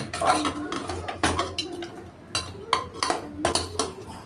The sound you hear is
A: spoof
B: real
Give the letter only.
B